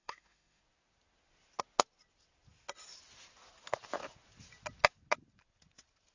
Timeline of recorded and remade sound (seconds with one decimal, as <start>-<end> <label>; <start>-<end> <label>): 0.0-0.6 remade; 0.6-6.1 recorded